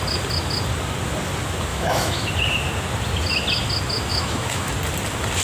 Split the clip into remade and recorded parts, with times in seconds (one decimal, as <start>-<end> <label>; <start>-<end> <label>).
0.0-1.7 recorded; 1.7-2.3 remade; 2.3-4.1 recorded; 4.1-4.7 remade; 4.7-5.4 recorded